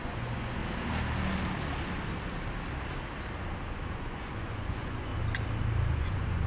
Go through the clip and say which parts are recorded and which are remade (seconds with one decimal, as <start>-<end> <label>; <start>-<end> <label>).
0.0-0.6 remade; 0.6-3.9 recorded; 3.9-5.1 remade; 5.1-5.9 recorded; 5.9-6.5 remade